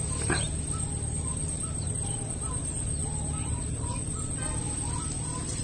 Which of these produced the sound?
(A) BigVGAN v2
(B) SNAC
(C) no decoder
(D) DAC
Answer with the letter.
C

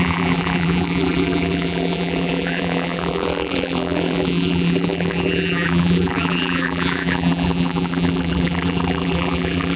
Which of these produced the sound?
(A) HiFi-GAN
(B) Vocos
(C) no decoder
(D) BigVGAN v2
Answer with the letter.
D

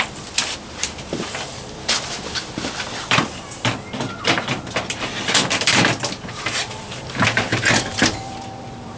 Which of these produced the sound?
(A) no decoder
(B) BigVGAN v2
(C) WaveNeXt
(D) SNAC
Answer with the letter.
B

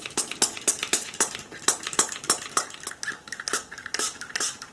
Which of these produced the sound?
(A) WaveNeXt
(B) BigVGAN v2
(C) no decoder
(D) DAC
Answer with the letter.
C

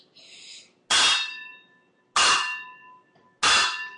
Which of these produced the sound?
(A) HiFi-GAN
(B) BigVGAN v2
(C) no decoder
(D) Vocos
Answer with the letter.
C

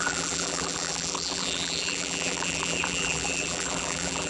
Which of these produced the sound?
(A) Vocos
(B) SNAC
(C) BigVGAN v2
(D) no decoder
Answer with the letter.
C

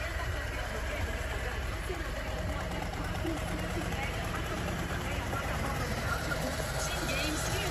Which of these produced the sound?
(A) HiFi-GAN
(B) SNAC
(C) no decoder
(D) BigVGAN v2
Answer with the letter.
D